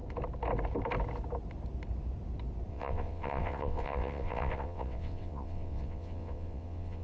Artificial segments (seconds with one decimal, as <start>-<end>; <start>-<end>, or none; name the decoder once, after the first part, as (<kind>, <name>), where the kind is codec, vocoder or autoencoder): 2.7-7.0 (vocoder, WaveNeXt)